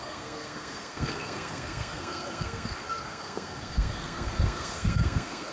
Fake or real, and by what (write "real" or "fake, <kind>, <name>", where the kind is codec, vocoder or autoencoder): fake, codec, SNAC